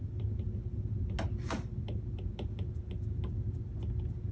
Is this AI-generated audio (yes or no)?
no